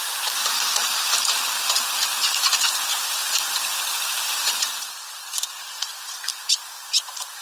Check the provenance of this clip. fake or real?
fake